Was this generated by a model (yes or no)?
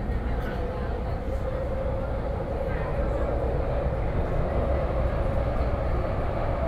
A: no